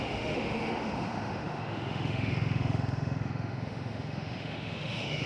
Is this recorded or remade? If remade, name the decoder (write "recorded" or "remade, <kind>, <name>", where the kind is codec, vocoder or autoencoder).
remade, autoencoder, DAC-VAE